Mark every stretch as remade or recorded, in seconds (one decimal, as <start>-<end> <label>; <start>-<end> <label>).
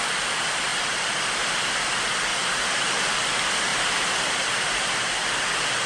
0.0-2.3 recorded; 2.3-3.1 remade; 3.1-3.7 recorded; 3.7-5.2 remade; 5.2-5.9 recorded